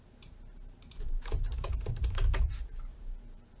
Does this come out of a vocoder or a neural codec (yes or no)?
yes